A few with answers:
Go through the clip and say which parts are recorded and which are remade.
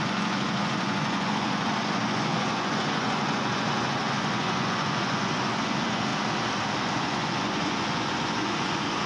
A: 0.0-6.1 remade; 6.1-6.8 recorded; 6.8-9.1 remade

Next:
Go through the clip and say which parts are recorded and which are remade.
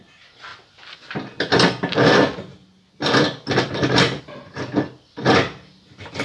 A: 0.0-6.2 recorded